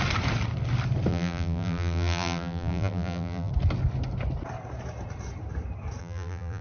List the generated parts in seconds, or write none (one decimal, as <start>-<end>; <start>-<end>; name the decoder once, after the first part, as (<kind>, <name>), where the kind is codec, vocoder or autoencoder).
1.1-3.5 (vocoder, BigVGAN v2); 6.0-6.6